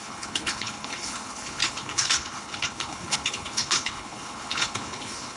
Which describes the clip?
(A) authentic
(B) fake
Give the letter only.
B